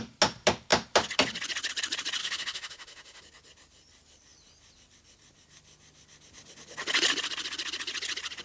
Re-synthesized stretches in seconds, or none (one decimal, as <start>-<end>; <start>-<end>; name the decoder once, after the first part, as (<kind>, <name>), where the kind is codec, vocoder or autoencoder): 2.2-3.2 (autoencoder, DAC-VAE)